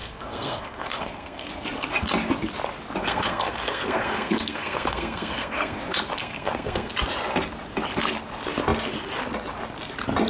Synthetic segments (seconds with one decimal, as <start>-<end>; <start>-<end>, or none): 0.0-1.5; 3.0-5.8; 6.2-6.9